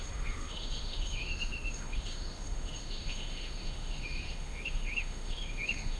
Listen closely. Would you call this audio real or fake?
fake